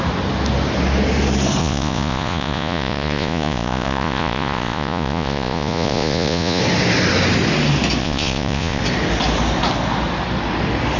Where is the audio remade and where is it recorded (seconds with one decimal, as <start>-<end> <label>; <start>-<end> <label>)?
0.0-1.6 recorded; 1.6-6.6 remade; 6.6-8.0 recorded; 8.0-8.8 remade; 8.8-11.0 recorded